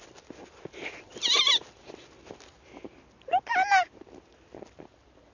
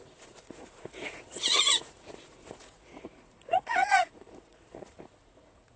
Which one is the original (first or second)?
first